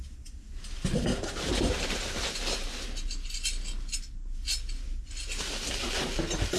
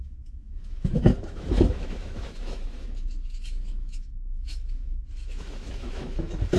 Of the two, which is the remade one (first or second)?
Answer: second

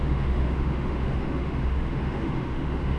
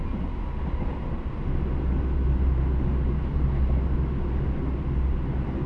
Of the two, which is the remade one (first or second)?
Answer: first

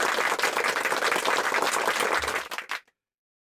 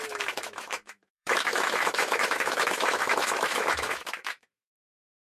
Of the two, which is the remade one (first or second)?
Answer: second